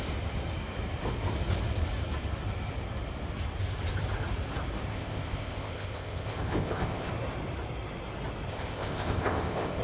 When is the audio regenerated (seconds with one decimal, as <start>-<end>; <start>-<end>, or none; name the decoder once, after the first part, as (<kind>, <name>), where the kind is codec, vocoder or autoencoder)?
4.9-7.1 (codec, ZipCodec); 8.5-9.8

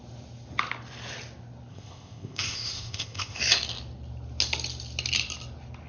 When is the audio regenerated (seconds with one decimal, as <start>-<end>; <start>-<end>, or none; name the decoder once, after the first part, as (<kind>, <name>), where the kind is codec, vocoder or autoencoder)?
1.7-3.4 (codec, ZipCodec)

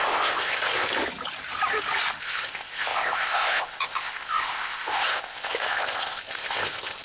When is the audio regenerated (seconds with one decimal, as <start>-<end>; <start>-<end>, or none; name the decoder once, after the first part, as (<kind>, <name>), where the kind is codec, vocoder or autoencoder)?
0.0-0.9 (codec, ZipCodec); 2.2-7.0

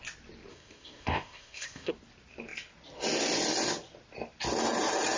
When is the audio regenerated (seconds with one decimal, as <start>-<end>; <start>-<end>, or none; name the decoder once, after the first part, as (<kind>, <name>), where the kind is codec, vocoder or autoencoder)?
0.5-1.9 (codec, ZipCodec)

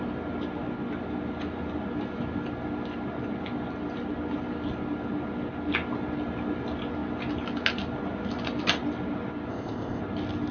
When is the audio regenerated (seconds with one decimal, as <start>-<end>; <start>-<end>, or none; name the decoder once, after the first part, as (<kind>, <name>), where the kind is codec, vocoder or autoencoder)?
9.5-10.0 (codec, ZipCodec)

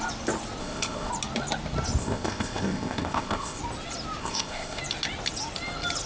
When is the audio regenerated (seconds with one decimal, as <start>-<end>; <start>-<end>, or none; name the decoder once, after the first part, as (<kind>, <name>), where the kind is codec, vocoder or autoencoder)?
0.6-1.1 (codec, ZipCodec); 2.0-3.6; 4.2-4.8

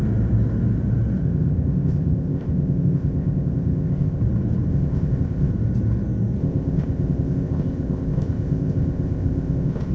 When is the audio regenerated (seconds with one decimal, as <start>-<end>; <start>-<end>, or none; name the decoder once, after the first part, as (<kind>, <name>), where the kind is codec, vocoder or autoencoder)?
1.2-4.2 (codec, ZipCodec); 4.7-5.5; 6.4-9.9